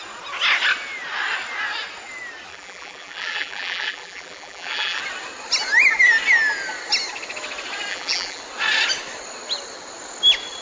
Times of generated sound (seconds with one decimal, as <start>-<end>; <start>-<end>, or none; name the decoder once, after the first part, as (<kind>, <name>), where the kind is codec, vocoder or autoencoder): 2.5-5.0 (vocoder, BigVGAN v2); 7.9-8.4